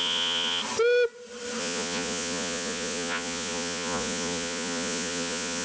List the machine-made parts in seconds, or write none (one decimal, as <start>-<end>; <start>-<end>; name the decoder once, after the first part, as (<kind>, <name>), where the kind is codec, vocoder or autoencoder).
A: 0.0-0.6 (vocoder, Vocos); 1.6-5.6